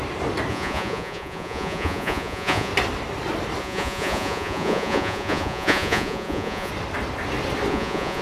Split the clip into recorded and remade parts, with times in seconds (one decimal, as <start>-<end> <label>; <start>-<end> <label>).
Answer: 0.0-0.5 recorded; 0.5-2.7 remade; 2.7-3.6 recorded; 3.6-6.7 remade; 6.7-7.7 recorded; 7.7-8.2 remade